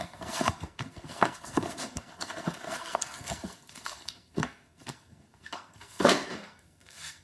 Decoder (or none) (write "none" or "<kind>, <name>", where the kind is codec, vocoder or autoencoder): codec, SNAC